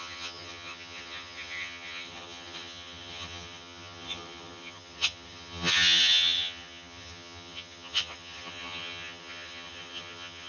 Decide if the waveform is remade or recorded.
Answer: remade